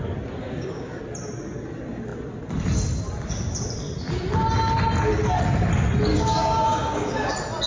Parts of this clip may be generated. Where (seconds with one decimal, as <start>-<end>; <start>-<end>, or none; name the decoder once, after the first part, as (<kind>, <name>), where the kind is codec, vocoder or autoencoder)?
0.4-1.0 (codec, DAC); 6.1-7.3

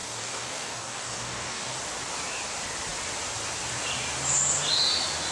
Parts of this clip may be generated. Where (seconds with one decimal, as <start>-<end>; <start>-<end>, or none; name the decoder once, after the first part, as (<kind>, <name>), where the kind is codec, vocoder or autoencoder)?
0.0-1.8 (codec, DAC)